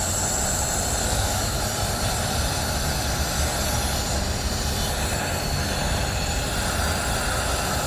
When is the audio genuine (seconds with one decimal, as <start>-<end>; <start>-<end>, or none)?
0.0-1.0; 1.6-7.9